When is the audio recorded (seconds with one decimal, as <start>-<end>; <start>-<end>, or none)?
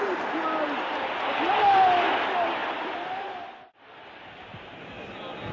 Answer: 0.0-5.5